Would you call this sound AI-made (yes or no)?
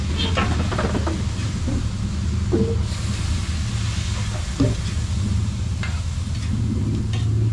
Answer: no